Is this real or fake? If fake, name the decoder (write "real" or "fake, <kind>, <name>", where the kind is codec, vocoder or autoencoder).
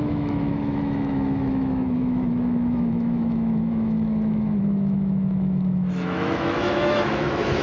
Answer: fake, autoencoder, DAC-VAE